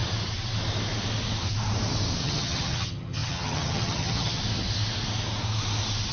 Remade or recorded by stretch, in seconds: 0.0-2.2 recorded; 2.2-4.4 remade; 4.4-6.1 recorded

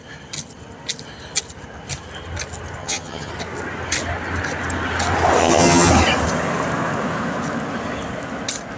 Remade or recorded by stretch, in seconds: 0.0-2.8 recorded; 2.8-3.3 remade; 3.3-5.4 recorded; 5.4-5.9 remade; 5.9-8.8 recorded

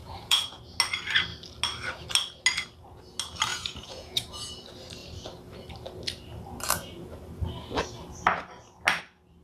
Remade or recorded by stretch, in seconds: 0.0-0.6 remade; 0.6-3.5 recorded; 3.5-4.5 remade; 4.5-9.4 recorded

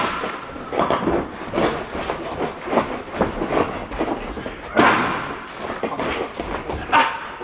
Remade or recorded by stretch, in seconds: 0.0-7.4 recorded

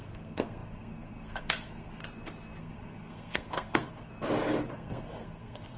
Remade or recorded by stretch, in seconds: 0.0-2.0 remade; 2.0-2.6 recorded; 2.6-4.1 remade; 4.1-4.7 recorded; 4.7-5.8 remade

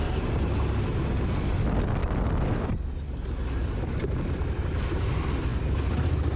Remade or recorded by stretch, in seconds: 0.0-6.4 recorded